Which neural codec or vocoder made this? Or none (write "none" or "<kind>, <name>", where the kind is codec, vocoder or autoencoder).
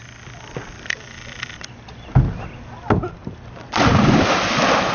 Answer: none